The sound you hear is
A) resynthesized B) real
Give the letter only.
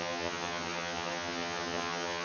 A